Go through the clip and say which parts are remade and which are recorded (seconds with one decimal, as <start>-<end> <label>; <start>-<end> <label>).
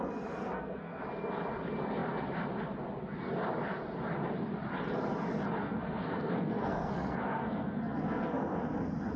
0.0-0.4 recorded; 0.4-1.0 remade; 1.0-5.6 recorded; 5.6-8.6 remade; 8.6-9.2 recorded